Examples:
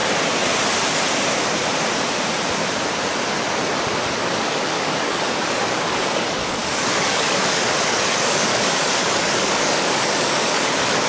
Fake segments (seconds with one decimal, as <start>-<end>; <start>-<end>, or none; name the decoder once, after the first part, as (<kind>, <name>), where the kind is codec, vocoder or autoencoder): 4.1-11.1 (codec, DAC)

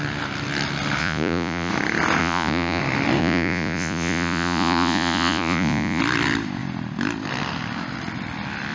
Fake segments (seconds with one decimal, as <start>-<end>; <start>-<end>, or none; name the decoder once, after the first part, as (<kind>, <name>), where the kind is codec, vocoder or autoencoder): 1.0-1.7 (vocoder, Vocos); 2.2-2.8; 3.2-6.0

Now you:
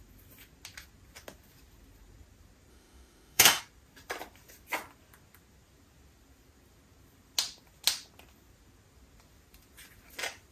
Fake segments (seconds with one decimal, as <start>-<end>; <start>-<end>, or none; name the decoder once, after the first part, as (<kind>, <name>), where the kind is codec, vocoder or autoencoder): 2.7-3.6 (autoencoder, DAC-VAE)

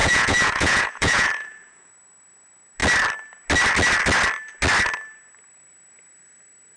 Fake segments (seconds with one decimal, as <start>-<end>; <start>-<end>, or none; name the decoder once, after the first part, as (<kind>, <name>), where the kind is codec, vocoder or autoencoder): 0.0-1.9 (vocoder, Vocos)

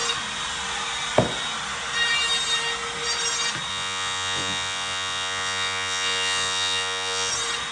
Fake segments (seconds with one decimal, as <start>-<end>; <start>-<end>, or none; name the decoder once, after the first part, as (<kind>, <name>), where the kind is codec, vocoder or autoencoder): 3.7-7.3 (vocoder, Vocos)

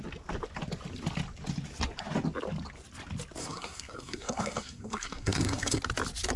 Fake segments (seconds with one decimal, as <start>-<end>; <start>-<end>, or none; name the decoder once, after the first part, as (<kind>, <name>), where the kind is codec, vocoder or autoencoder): 3.4-5.8 (codec, SNAC)

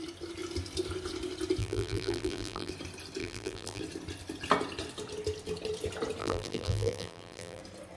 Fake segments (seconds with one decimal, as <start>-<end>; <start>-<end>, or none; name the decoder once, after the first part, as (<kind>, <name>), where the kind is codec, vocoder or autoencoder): 1.6-2.7 (vocoder, BigVGAN v2); 3.2-3.8; 6.2-7.6

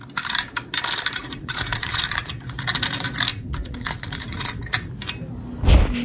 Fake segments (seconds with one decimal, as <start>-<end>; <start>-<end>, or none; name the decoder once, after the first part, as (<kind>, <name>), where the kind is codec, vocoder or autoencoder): 1.2-2.3 (vocoder, Vocos); 3.3-4.6